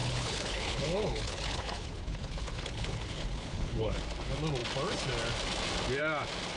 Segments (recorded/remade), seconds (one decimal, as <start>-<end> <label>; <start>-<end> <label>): 0.0-4.0 remade; 4.0-6.6 recorded